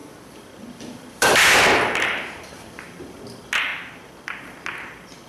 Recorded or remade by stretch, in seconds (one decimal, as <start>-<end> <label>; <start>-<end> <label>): 0.0-3.2 remade; 3.2-5.3 recorded